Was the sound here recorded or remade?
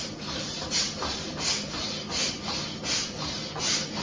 recorded